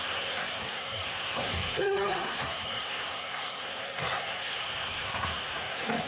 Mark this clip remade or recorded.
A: remade